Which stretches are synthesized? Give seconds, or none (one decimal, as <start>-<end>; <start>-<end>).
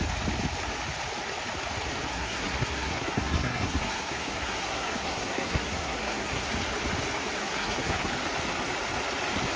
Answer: 2.1-6.5; 7.4-8.1